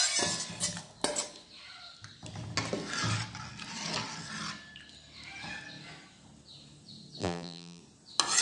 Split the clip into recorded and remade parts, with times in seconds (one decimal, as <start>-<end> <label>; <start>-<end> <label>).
0.0-7.2 recorded; 7.2-7.8 remade; 7.8-8.4 recorded

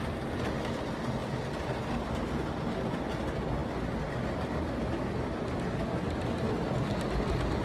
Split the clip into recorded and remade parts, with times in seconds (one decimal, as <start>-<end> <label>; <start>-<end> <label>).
0.0-7.6 recorded

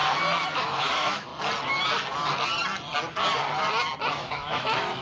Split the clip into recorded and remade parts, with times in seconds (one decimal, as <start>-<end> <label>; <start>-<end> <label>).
0.0-0.6 recorded; 0.6-1.3 remade; 1.3-4.1 recorded; 4.1-5.0 remade

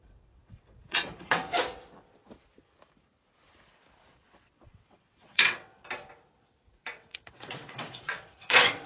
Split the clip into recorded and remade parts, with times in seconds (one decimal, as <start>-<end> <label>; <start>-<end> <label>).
0.0-1.4 remade; 1.4-4.2 recorded; 4.2-5.7 remade; 5.7-6.8 recorded; 6.8-8.9 remade

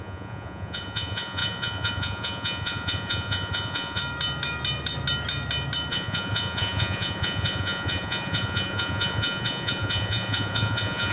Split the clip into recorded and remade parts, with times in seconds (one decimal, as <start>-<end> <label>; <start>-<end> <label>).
0.0-4.0 remade; 4.0-5.9 recorded; 5.9-11.1 remade